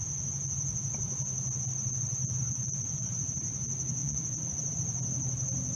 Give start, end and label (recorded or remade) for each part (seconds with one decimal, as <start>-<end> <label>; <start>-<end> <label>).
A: 0.0-2.2 recorded; 2.2-3.2 remade; 3.2-4.0 recorded; 4.0-4.7 remade; 4.7-5.8 recorded